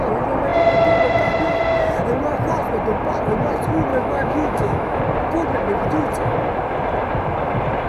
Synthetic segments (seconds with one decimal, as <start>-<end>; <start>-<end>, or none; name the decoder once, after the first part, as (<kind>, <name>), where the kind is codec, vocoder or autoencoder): 3.9-5.0 (autoencoder, DAC-VAE)